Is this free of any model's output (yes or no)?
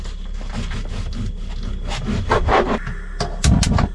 yes